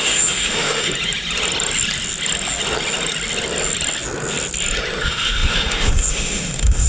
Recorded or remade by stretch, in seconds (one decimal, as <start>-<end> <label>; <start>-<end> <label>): 0.0-0.9 remade; 0.9-5.0 recorded; 5.0-6.9 remade